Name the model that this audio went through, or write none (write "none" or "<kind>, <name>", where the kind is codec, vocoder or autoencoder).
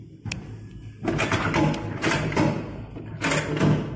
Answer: none